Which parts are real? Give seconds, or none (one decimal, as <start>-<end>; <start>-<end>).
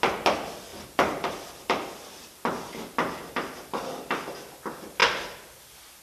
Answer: 0.0-0.7; 4.3-6.0